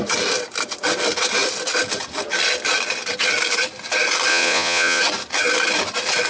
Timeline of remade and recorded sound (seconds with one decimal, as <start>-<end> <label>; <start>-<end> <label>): 0.0-4.3 recorded; 4.3-5.0 remade; 5.0-6.3 recorded